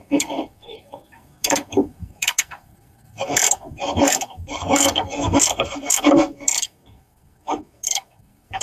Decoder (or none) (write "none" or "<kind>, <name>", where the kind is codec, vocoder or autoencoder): codec, SNAC